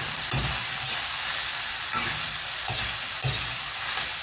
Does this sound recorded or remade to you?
recorded